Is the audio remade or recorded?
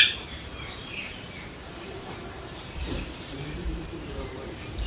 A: remade